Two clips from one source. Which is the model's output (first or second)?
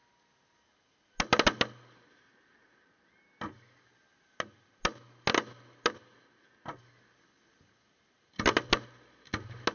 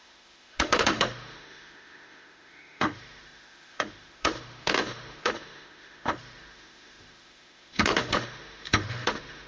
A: second